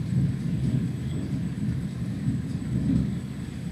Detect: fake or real fake